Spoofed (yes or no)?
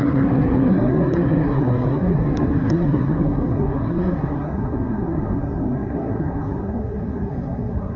yes